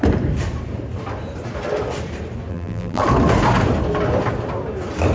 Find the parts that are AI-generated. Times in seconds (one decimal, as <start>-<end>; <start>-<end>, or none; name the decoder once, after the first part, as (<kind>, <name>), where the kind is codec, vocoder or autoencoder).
2.5-3.0 (vocoder, BigVGAN v2)